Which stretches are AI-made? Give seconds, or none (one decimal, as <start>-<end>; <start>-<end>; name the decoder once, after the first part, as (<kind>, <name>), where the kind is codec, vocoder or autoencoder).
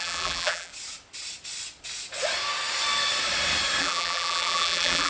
0.0-0.7 (vocoder, BigVGAN v2); 3.8-5.1